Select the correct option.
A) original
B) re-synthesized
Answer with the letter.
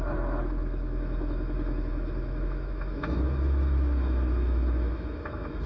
B